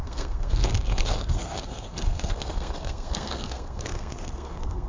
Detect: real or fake fake